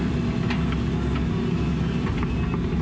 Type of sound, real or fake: real